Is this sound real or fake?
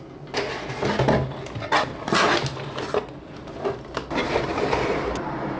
real